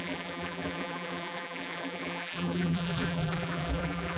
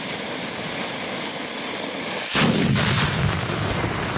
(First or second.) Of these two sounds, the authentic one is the second